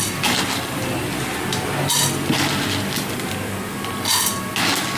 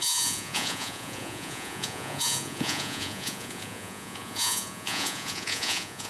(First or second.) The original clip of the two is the first